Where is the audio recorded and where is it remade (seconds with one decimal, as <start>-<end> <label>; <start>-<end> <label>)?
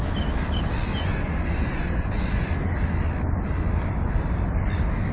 0.0-0.9 recorded; 0.9-2.5 remade; 2.5-5.1 recorded